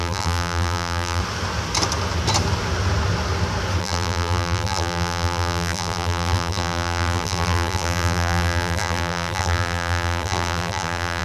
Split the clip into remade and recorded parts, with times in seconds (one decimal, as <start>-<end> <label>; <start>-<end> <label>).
0.0-1.2 remade; 1.2-3.8 recorded; 3.8-11.2 remade